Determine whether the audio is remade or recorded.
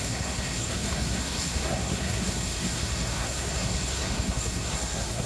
remade